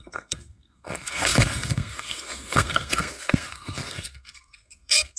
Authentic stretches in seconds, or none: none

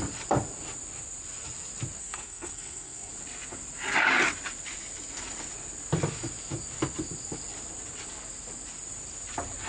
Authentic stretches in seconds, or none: 0.0-2.0; 3.1-9.7

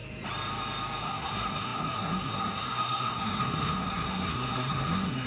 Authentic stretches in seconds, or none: 0.0-1.0

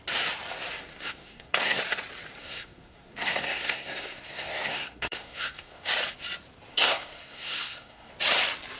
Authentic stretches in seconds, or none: 0.0-0.9; 1.8-2.4; 5.9-6.7; 8.1-8.8

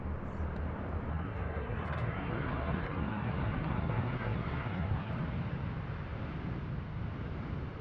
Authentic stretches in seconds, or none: 0.0-1.1; 5.1-7.8

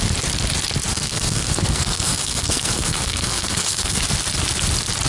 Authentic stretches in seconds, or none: 0.0-0.9; 4.0-5.1

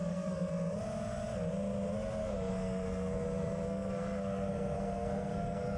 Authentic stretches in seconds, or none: 0.5-2.2

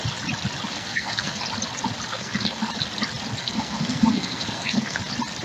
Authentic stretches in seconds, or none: 0.0-0.7; 1.4-2.1; 2.6-3.4; 5.0-5.4